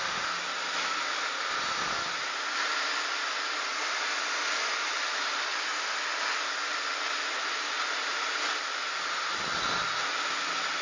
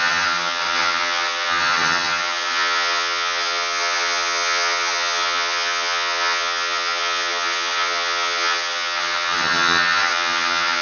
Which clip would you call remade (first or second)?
second